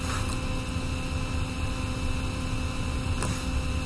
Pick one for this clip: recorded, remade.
recorded